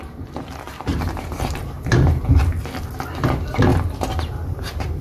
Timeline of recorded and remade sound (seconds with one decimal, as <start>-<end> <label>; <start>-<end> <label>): 0.0-0.9 recorded; 0.9-2.2 remade; 2.2-3.7 recorded; 3.7-5.0 remade